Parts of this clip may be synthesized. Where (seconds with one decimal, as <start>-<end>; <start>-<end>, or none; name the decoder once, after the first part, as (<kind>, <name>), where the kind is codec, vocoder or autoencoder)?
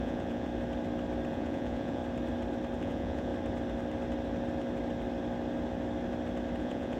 0.0-0.5 (vocoder, Vocos); 1.3-2.0; 2.8-3.3; 6.6-7.0